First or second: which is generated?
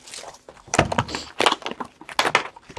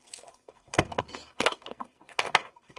second